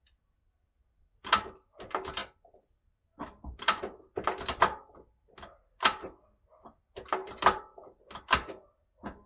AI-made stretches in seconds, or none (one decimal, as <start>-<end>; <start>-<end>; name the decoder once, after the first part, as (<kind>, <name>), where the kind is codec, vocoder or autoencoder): none

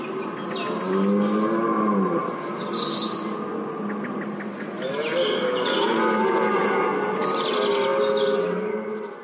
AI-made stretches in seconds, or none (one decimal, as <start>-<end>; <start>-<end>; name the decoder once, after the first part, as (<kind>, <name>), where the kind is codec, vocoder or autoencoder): none

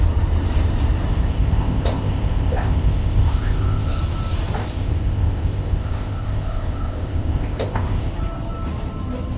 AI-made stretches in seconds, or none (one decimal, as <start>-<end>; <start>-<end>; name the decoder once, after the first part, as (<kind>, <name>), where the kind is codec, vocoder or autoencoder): 1.1-4.0 (codec, ZipCodec); 4.6-8.1